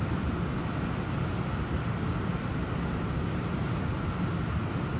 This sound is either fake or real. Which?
real